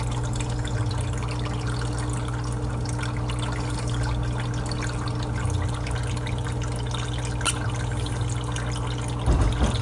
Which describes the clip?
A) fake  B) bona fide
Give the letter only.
B